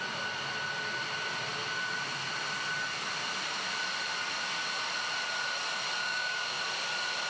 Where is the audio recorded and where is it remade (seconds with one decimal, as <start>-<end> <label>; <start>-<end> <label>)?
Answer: 0.0-6.0 recorded; 6.0-6.6 remade; 6.6-7.3 recorded